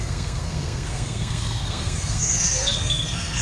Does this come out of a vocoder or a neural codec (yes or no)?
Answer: yes